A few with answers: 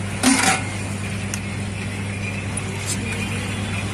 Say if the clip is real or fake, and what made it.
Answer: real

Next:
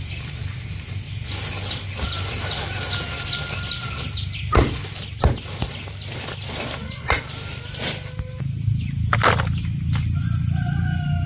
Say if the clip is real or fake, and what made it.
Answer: real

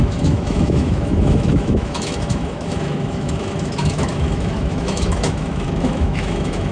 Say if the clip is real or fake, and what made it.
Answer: fake, autoencoder, DAC-VAE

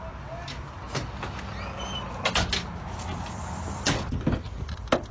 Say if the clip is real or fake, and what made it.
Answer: real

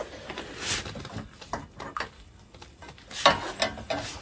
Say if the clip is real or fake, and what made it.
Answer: real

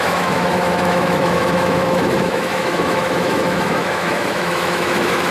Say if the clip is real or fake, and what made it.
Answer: fake, autoencoder, DAC-VAE